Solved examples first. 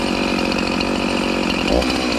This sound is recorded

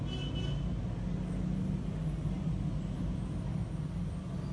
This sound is recorded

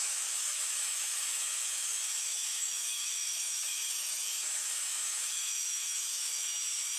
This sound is remade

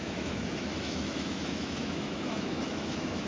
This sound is remade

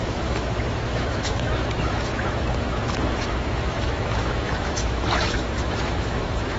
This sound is remade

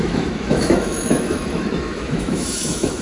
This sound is remade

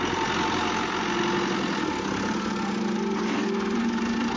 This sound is recorded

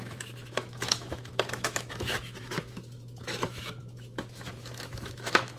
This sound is remade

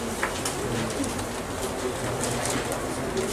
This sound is recorded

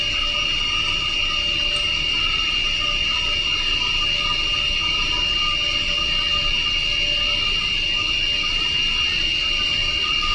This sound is recorded